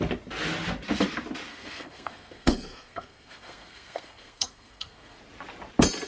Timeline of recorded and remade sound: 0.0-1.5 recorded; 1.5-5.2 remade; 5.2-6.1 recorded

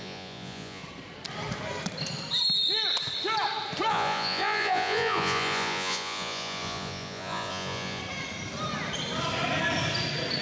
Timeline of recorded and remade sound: 0.0-0.8 remade; 0.8-3.9 recorded; 3.9-8.0 remade; 8.0-10.4 recorded

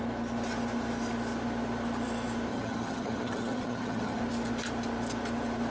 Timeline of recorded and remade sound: 0.0-2.5 recorded; 2.5-4.2 remade; 4.2-5.7 recorded

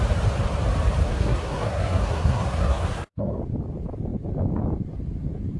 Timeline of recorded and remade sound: 0.0-1.0 recorded; 1.0-3.4 remade; 3.4-5.6 recorded

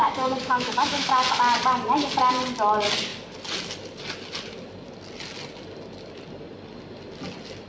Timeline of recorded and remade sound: 0.0-1.1 remade; 1.1-7.7 recorded